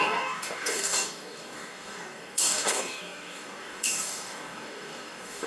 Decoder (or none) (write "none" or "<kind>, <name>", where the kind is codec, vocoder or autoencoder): codec, DAC